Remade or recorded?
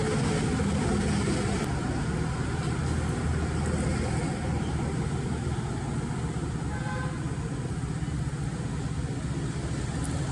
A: recorded